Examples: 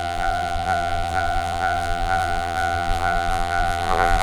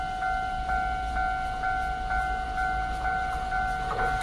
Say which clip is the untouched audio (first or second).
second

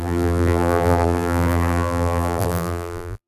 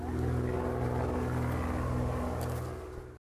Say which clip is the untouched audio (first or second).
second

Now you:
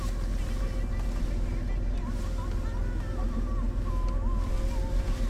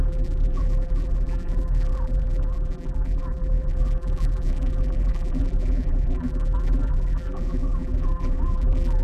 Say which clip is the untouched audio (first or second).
first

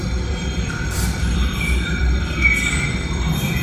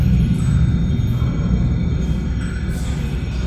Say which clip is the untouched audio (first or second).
second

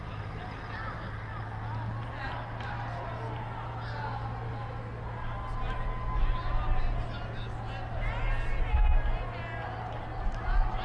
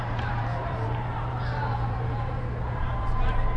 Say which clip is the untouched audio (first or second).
first